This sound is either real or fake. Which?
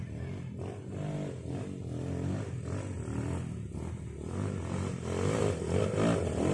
real